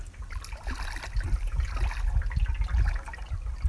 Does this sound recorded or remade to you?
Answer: recorded